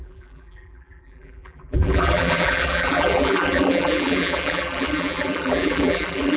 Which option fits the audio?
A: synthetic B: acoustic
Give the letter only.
A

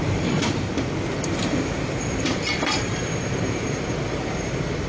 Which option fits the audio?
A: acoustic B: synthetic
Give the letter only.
B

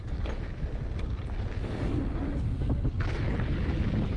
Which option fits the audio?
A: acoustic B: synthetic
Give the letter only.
A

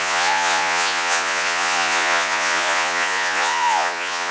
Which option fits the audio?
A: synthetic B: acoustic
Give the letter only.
A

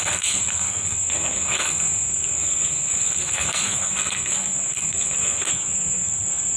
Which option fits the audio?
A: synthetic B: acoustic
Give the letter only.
A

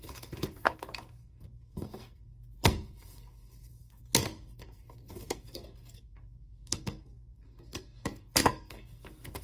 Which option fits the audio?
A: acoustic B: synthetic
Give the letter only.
B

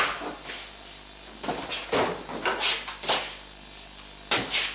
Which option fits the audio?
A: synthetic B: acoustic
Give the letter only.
B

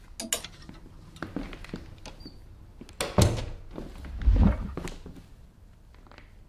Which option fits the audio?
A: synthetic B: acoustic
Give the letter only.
B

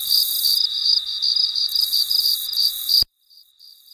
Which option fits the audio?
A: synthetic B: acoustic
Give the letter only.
A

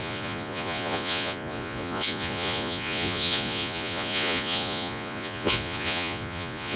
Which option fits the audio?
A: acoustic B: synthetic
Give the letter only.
B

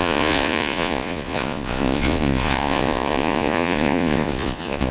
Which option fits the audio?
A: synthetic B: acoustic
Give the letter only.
A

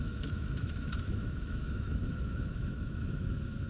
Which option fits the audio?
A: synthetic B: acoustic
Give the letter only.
A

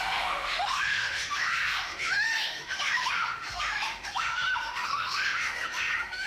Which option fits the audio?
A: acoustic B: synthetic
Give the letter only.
B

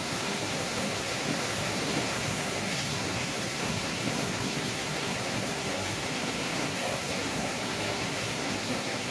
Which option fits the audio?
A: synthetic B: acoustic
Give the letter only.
A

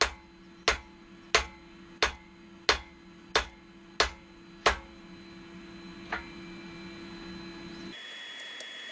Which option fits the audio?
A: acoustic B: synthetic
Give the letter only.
A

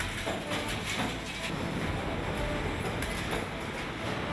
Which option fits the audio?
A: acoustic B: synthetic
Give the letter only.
A